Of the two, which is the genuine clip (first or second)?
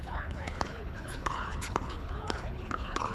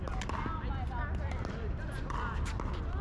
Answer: second